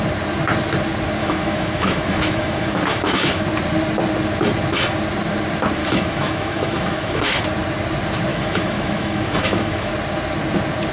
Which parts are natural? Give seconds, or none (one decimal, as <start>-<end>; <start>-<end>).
0.0-1.2; 3.4-5.8; 7.4-8.3; 9.9-10.9